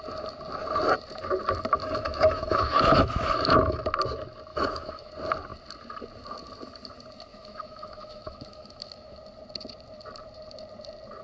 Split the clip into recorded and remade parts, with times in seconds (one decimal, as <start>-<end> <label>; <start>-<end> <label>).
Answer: 0.0-1.8 recorded; 1.8-3.8 remade; 3.8-4.5 recorded; 4.5-5.1 remade; 5.1-7.3 recorded; 7.3-9.2 remade; 9.2-11.2 recorded